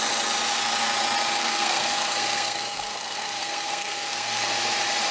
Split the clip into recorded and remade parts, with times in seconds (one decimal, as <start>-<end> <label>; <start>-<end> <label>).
0.0-1.4 recorded; 1.4-4.5 remade; 4.5-5.1 recorded